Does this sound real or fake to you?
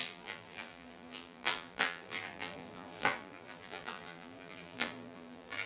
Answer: fake